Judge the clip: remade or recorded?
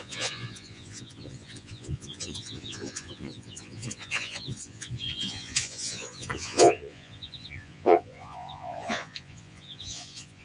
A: remade